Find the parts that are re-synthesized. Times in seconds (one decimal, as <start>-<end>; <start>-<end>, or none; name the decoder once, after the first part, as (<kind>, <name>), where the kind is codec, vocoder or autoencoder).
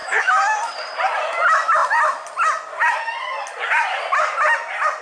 0.0-0.7 (autoencoder, DAC-VAE)